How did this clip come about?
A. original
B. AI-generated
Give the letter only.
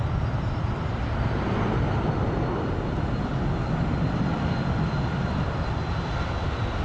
A